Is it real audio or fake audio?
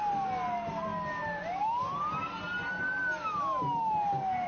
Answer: real